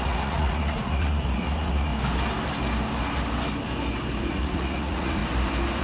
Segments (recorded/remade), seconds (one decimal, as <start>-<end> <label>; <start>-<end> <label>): 0.0-1.9 remade; 1.9-4.3 recorded; 4.3-5.2 remade; 5.2-5.8 recorded